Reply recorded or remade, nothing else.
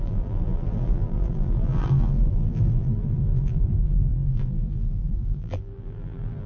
remade